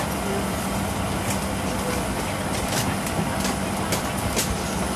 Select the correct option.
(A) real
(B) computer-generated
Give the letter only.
A